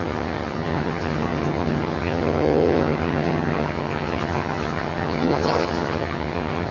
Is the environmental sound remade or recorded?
remade